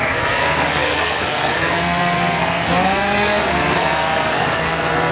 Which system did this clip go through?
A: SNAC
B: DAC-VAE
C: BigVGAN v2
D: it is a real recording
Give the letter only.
A